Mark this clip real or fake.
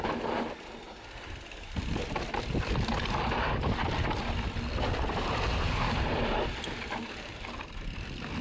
fake